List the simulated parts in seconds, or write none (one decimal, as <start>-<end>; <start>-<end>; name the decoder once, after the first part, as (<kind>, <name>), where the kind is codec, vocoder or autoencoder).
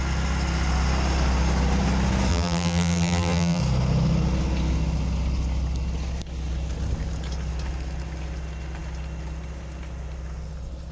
2.3-3.6 (vocoder, BigVGAN v2)